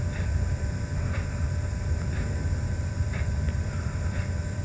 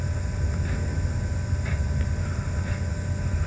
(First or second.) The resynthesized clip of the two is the first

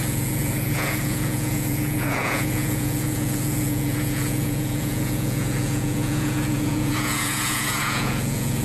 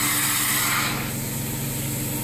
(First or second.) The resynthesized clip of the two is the first